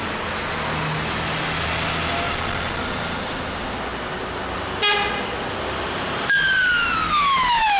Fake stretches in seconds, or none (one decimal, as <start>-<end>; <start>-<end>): none

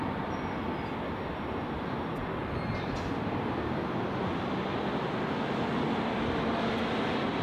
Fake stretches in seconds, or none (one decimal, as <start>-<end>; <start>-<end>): none

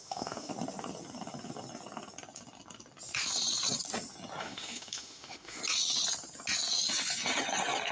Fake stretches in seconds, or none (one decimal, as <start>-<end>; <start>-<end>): 0.0-0.5; 4.4-5.6

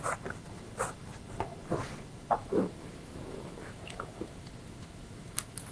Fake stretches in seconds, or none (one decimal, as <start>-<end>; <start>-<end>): 2.4-5.7

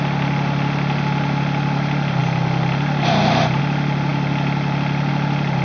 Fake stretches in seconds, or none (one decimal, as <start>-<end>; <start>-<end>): none

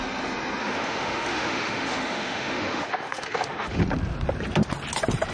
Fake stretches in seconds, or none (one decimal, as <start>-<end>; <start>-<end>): 0.6-3.8

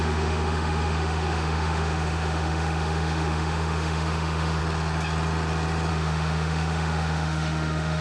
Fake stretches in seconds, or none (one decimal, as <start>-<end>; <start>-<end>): 0.0-4.6; 5.9-8.0

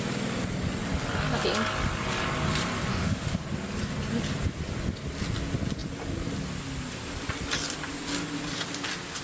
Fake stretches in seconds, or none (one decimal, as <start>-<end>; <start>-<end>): 2.9-3.4